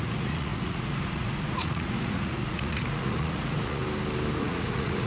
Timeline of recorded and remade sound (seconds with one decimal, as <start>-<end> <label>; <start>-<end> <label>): 0.0-3.8 remade; 3.8-4.4 recorded; 4.4-5.1 remade